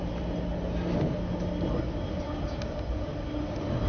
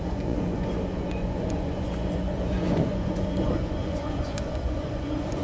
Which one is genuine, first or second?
first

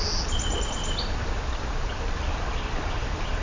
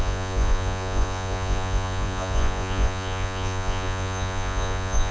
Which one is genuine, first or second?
first